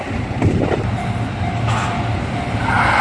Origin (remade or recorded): recorded